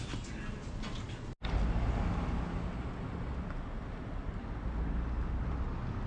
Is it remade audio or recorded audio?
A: recorded